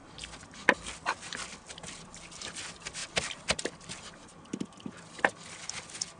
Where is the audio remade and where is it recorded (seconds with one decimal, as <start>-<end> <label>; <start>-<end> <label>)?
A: 0.0-6.2 recorded